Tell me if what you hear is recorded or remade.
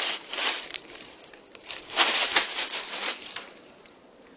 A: remade